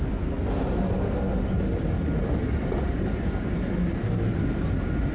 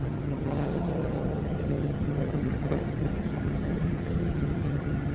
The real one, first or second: first